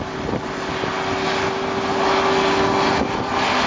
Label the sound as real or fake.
real